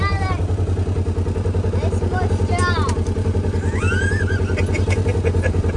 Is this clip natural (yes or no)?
yes